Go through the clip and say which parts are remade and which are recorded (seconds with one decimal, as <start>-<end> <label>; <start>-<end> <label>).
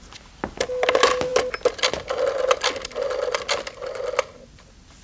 0.0-5.0 recorded